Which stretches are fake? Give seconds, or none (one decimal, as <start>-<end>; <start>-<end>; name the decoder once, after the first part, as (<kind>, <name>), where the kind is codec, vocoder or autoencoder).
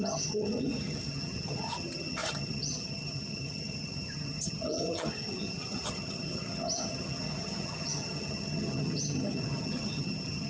0.0-10.5 (vocoder, HiFi-GAN)